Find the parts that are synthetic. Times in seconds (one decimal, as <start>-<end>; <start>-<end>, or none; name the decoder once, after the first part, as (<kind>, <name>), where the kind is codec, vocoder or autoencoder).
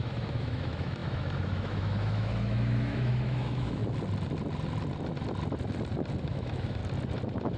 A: 0.0-3.8 (autoencoder, DAC-VAE); 6.2-6.8